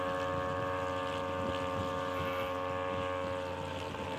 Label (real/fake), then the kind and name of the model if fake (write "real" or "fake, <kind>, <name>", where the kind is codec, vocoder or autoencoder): real